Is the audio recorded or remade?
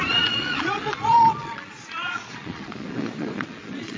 remade